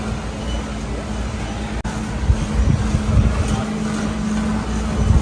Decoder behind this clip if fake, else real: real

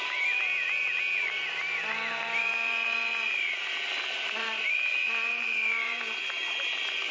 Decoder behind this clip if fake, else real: fake, vocoder, BigVGAN v2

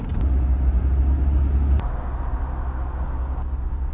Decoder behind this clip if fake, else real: real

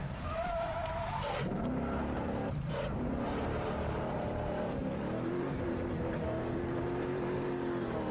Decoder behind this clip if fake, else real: fake, vocoder, BigVGAN v2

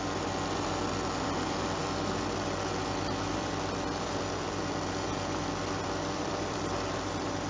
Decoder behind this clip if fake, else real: fake, vocoder, BigVGAN v2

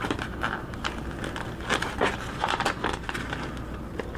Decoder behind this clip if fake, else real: real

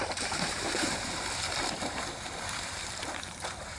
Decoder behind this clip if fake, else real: fake, vocoder, BigVGAN v2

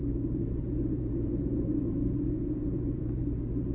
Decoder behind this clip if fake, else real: fake, vocoder, BigVGAN v2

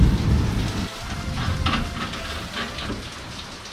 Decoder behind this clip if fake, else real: real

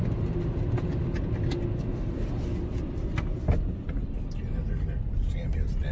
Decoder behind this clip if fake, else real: real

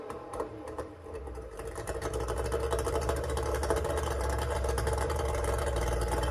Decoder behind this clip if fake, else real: fake, vocoder, BigVGAN v2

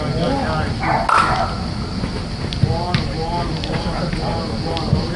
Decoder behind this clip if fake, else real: real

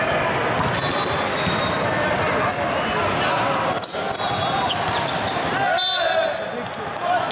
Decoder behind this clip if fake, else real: real